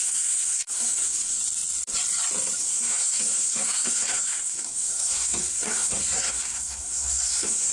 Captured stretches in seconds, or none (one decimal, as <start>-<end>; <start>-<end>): 1.4-2.6